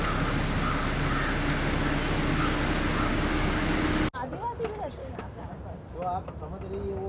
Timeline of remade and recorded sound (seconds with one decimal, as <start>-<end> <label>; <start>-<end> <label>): 0.0-3.1 recorded; 3.1-3.6 remade; 3.6-5.0 recorded; 5.0-5.6 remade; 5.6-7.1 recorded